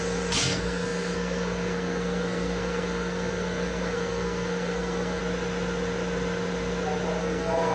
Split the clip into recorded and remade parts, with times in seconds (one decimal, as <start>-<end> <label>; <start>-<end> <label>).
0.0-5.2 remade; 5.2-7.2 recorded; 7.2-7.7 remade